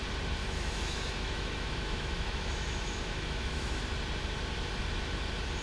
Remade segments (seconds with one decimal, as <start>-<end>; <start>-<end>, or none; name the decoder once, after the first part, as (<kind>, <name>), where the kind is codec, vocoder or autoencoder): 0.4-3.8 (autoencoder, DAC-VAE)